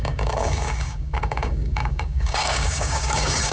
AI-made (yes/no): yes